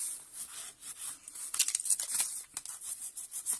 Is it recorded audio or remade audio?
recorded